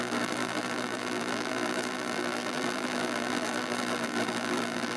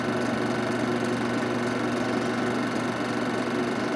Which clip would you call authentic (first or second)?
second